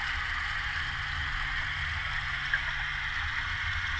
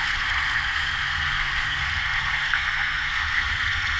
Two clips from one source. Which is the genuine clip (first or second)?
first